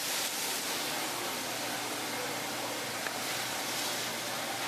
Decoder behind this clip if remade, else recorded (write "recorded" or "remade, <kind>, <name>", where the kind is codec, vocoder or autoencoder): recorded